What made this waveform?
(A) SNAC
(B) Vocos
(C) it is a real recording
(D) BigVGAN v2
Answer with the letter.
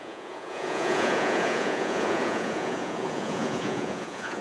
B